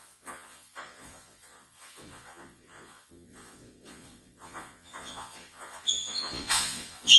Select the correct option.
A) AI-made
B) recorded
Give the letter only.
A